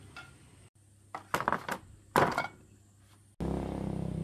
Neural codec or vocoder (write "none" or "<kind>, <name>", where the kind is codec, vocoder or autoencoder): none